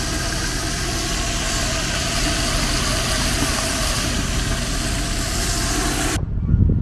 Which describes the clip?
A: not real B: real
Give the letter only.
B